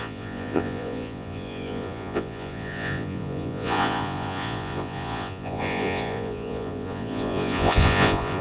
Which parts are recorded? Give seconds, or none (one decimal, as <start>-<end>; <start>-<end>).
none